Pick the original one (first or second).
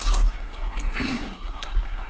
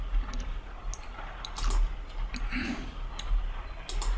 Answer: second